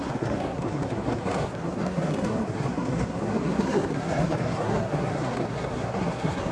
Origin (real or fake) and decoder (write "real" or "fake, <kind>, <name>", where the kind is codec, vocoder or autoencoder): fake, codec, SNAC